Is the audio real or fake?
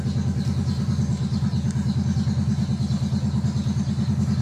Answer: real